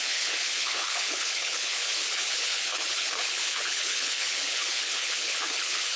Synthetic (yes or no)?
yes